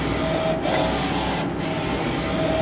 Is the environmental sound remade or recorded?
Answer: recorded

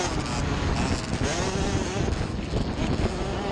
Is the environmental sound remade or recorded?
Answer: recorded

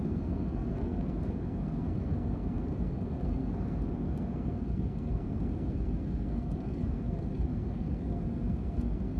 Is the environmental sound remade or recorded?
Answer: remade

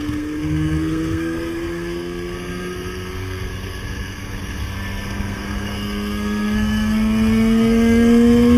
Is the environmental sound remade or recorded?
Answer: remade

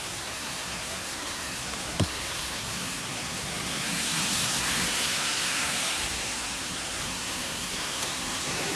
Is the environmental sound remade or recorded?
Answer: remade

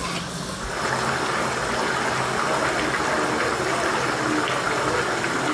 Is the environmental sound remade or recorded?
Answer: recorded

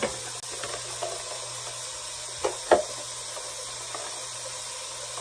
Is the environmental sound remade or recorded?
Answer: recorded